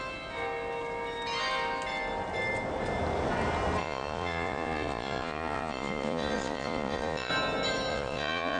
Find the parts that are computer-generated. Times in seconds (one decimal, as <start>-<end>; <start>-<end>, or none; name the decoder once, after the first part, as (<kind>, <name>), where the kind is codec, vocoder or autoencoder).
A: 3.8-7.3 (vocoder, Vocos); 7.9-8.6